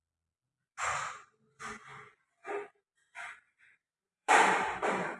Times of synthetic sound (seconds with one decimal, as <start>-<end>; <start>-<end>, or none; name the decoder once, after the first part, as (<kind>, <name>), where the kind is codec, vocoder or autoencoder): 3.3-5.2 (vocoder, BigVGAN v2)